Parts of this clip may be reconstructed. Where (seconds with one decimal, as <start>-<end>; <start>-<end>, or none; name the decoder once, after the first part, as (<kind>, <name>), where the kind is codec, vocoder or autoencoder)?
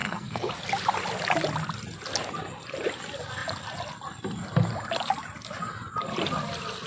0.0-0.5 (codec, SNAC)